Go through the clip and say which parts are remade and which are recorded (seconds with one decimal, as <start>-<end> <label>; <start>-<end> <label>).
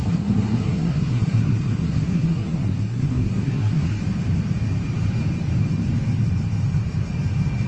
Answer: 0.0-4.0 remade; 4.0-7.7 recorded